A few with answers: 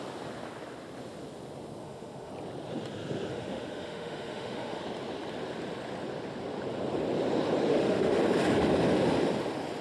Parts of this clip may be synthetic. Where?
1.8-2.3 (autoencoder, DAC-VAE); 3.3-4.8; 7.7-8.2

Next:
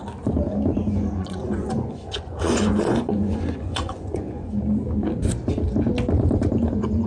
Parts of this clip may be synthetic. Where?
0.7-4.5 (vocoder, Vocos)

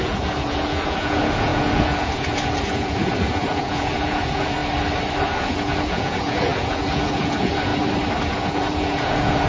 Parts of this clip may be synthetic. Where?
0.0-4.6 (vocoder, Vocos); 5.4-7.7; 8.3-9.5

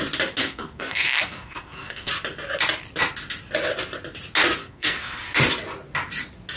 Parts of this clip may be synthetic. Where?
0.4-2.1 (codec, SNAC); 4.6-5.2

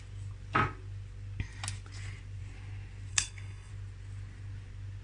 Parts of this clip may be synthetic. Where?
3.1-3.7 (codec, HILCodec)

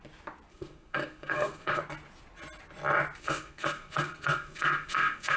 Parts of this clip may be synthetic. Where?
0.5-1.8 (codec, SNAC); 3.2-5.4

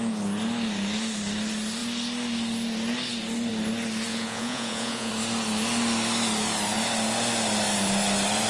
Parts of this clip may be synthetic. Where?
4.1-5.1 (vocoder, Vocos)